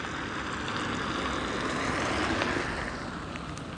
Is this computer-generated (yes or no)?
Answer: no